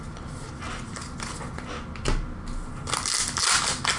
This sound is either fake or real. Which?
real